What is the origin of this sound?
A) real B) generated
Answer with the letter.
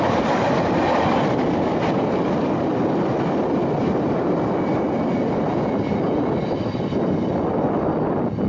A